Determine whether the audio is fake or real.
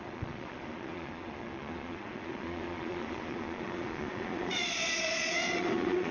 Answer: fake